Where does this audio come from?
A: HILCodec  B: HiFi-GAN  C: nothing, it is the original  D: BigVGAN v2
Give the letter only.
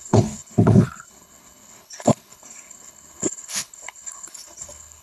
A